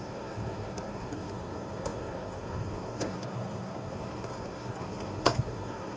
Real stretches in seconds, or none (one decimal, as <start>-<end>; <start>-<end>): none

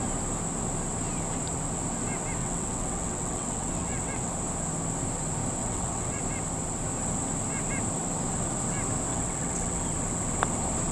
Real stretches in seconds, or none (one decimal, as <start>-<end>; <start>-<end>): 0.0-2.4; 4.3-5.6; 6.2-9.1; 9.8-10.9

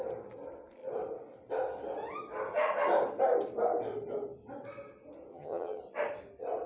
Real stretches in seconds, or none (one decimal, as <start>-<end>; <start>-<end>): 0.0-5.3; 5.8-6.7